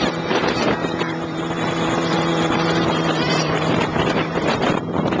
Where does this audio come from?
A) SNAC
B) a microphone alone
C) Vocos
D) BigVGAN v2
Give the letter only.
D